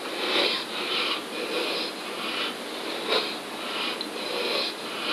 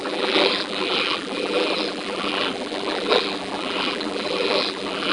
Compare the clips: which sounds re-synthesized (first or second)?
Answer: second